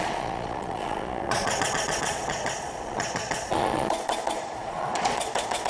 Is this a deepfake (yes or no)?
yes